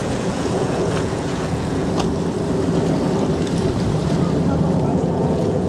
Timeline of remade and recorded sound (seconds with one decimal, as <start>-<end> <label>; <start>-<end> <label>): 0.0-2.1 remade; 2.1-4.9 recorded; 4.9-5.7 remade